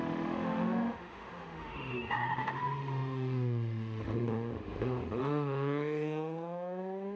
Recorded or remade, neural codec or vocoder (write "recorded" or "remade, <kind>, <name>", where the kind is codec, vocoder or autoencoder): remade, autoencoder, DAC-VAE